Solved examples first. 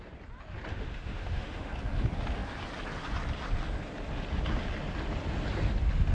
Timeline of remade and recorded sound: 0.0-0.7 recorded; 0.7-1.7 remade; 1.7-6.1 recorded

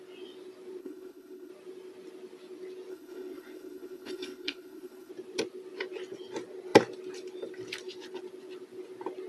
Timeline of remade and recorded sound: 0.0-0.8 recorded; 0.8-1.5 remade; 1.5-2.9 recorded; 2.9-5.1 remade; 5.1-9.3 recorded

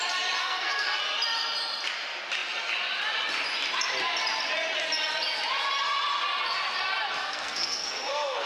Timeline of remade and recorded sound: 0.0-0.4 recorded; 0.4-1.0 remade; 1.0-7.2 recorded; 7.2-8.5 remade

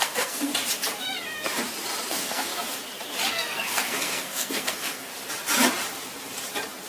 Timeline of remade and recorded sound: 0.0-0.5 remade; 0.5-2.1 recorded; 2.1-2.5 remade; 2.5-3.3 recorded; 3.3-5.1 remade; 5.1-6.9 recorded

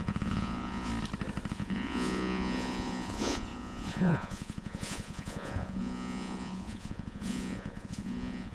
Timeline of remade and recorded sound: 0.0-0.9 remade; 0.9-1.5 recorded; 1.5-8.5 remade

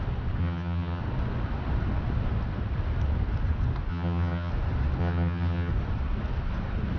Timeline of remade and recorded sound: 0.0-0.4 recorded; 0.4-1.0 remade; 1.0-3.9 recorded; 3.9-4.5 remade; 4.5-5.0 recorded; 5.0-5.7 remade; 5.7-7.0 recorded